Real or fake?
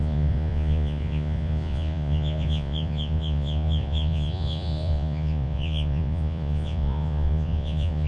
fake